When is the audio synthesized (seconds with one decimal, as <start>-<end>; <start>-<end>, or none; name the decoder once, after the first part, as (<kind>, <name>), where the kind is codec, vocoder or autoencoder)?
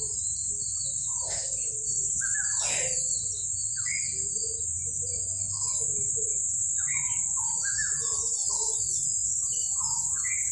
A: none